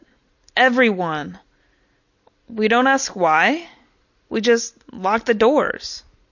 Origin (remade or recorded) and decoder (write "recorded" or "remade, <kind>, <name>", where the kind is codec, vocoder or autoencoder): recorded